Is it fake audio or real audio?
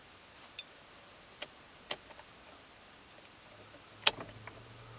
real